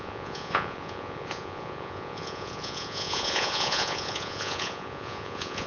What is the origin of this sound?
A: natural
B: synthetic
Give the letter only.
B